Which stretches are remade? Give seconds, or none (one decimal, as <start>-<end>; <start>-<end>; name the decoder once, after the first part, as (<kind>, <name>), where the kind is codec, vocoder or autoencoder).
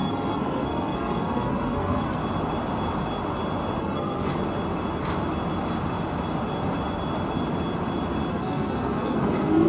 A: 0.0-2.2 (codec, SNAC); 3.8-4.3; 8.3-9.7